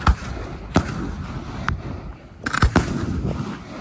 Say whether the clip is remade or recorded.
recorded